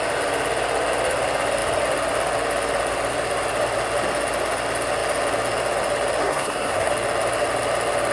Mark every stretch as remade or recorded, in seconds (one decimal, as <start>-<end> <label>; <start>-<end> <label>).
0.0-6.2 recorded; 6.2-6.9 remade; 6.9-8.1 recorded